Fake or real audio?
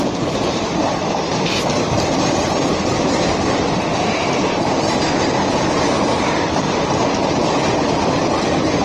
real